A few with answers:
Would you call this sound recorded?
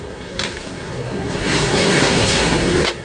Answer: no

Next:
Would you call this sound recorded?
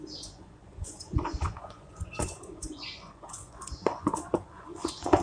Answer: no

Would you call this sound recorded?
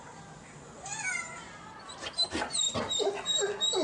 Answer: yes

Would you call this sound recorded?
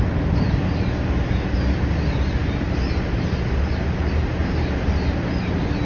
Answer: yes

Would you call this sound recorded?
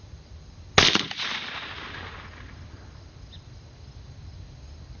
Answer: yes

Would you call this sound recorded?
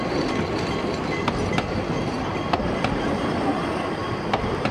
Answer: yes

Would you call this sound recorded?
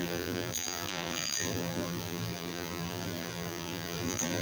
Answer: no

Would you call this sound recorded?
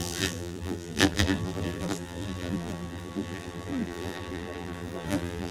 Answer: no